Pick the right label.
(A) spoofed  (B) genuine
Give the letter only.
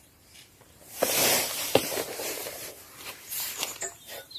A